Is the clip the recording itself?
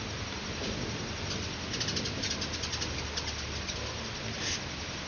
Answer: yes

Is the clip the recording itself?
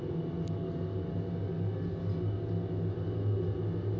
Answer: yes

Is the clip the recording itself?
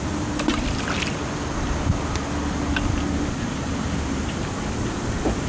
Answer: yes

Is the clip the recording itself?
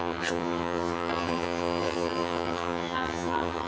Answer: no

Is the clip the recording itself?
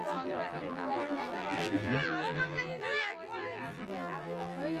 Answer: no